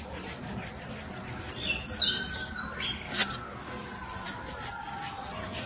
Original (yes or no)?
yes